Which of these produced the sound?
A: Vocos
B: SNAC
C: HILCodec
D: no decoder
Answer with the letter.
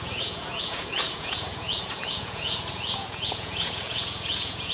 A